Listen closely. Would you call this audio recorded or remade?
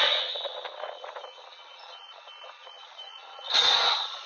remade